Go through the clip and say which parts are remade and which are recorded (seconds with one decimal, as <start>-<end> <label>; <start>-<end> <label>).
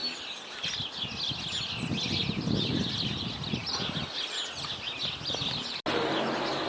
0.0-6.7 recorded